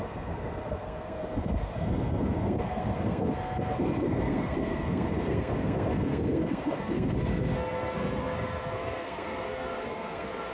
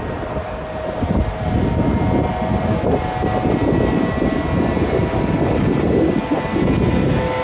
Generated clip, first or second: first